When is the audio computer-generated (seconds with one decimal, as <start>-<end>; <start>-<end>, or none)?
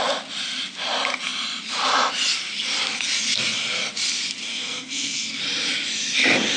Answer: 4.5-5.4